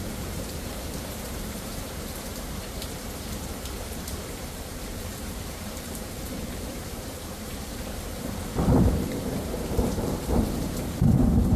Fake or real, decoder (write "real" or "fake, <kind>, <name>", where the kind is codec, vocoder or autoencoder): fake, vocoder, BigVGAN v2